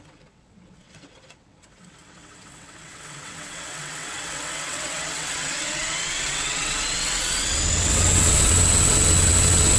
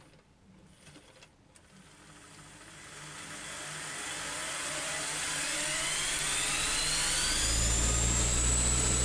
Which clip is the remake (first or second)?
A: first